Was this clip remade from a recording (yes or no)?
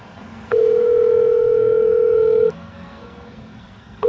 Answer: yes